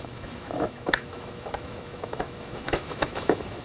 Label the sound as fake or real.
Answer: fake